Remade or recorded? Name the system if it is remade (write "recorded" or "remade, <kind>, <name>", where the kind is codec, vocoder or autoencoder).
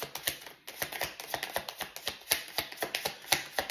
recorded